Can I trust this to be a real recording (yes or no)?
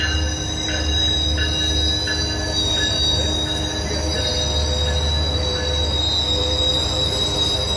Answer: yes